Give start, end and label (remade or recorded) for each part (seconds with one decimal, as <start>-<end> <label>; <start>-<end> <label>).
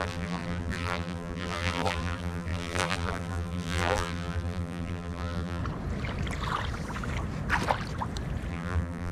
0.0-5.6 remade; 5.6-8.5 recorded; 8.5-9.1 remade